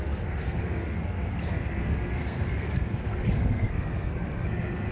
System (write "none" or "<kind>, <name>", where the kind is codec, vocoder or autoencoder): codec, SNAC